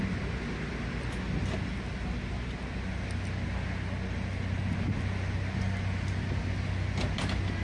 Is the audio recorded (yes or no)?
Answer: yes